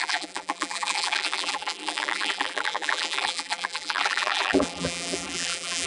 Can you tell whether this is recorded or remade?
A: remade